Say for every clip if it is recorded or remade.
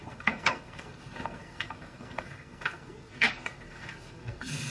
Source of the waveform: remade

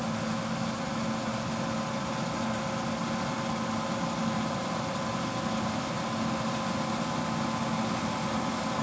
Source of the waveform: recorded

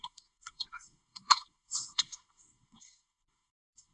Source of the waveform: remade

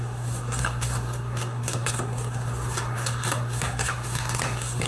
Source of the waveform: remade